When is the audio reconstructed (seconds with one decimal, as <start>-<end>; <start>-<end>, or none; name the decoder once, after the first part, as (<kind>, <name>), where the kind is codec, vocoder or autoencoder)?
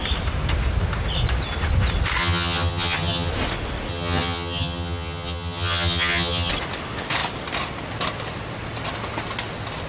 2.2-3.3 (vocoder, HiFi-GAN); 3.9-6.5